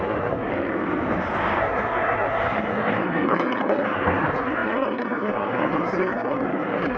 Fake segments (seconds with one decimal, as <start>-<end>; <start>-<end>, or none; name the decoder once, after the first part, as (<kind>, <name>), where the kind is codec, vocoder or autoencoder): 0.0-0.5 (codec, SNAC); 1.6-7.0